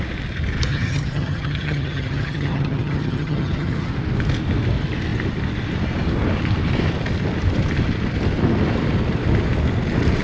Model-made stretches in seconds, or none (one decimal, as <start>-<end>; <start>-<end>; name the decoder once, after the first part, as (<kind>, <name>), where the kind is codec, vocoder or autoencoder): 0.7-3.9 (vocoder, HiFi-GAN)

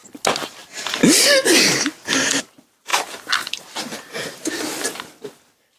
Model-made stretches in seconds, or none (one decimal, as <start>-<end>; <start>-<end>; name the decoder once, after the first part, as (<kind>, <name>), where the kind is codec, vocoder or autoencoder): none

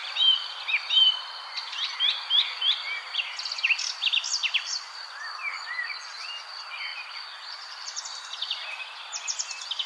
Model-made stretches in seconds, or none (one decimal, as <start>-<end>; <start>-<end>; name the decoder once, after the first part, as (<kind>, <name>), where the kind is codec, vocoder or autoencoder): 0.0-5.0 (vocoder, BigVGAN v2); 6.9-8.0

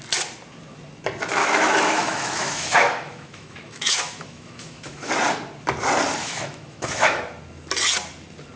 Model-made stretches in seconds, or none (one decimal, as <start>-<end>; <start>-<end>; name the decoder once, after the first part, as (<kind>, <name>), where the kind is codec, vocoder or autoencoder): 1.4-5.1 (autoencoder, DAC-VAE); 6.2-7.2

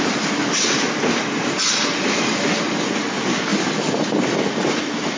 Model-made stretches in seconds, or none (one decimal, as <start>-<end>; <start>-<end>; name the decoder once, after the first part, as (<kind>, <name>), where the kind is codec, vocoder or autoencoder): none

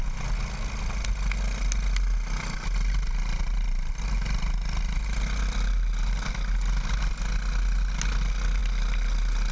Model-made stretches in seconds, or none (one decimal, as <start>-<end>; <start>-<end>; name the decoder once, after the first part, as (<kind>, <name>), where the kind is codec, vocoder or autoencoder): none

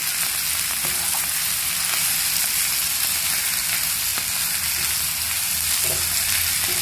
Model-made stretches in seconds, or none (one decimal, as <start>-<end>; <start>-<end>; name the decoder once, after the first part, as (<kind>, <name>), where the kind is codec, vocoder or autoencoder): none

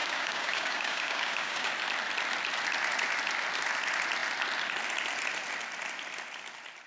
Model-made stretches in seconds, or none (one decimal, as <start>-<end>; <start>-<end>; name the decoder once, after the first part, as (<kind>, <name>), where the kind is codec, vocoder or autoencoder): 0.0-1.7 (codec, DAC)